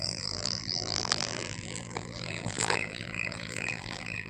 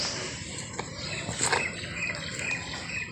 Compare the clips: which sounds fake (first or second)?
first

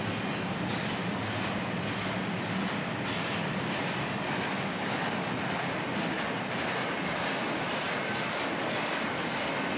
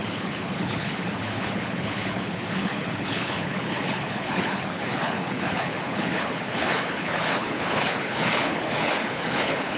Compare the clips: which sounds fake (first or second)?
second